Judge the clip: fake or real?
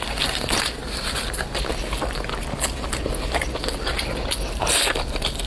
real